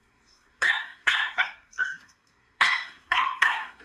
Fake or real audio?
fake